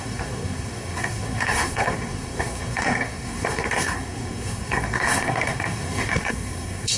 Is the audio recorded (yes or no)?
no